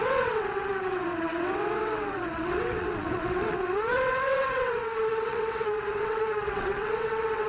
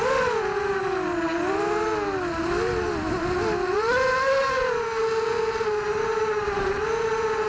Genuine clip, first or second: second